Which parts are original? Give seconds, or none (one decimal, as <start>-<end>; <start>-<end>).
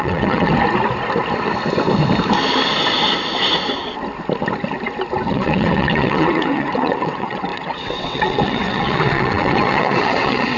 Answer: 0.5-5.3